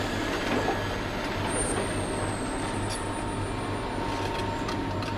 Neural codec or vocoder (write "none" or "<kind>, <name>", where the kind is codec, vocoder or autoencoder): none